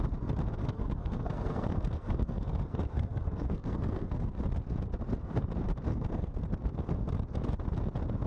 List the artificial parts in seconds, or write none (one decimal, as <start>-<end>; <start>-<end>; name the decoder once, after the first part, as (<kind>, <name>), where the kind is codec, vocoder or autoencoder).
0.6-4.4 (codec, SNAC); 5.9-6.4